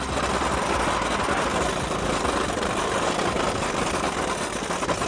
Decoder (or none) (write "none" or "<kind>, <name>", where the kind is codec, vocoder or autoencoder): none